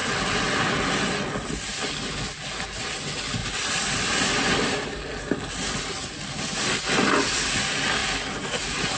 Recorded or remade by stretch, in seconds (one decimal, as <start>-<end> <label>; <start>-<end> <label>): 0.0-3.4 recorded; 3.4-6.8 remade; 6.8-9.0 recorded